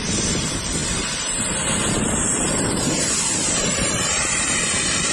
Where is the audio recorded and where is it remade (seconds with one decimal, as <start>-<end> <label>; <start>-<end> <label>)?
0.0-5.1 remade